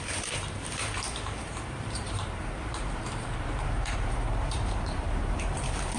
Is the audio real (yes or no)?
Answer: no